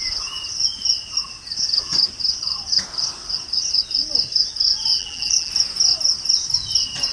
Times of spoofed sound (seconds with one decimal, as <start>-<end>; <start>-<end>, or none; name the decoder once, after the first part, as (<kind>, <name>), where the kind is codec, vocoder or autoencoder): 4.9-5.5 (vocoder, BigVGAN v2)